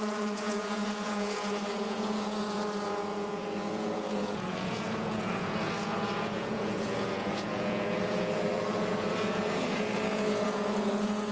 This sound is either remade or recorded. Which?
remade